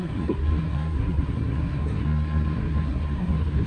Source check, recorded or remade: remade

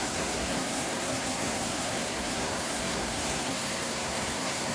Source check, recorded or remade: remade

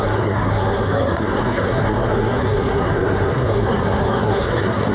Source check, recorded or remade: remade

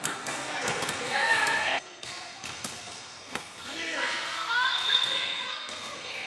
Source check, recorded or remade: remade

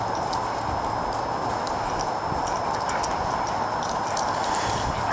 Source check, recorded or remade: recorded